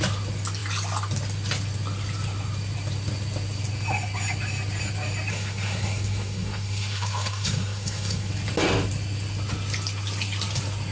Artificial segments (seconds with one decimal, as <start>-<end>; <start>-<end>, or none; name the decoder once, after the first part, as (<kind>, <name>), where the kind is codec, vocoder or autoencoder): 5.3-8.3 (codec, SNAC)